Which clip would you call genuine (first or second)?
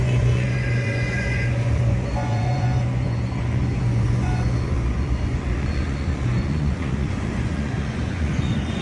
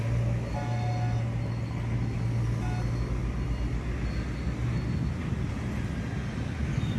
second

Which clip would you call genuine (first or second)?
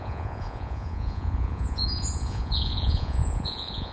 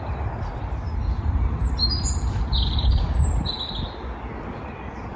second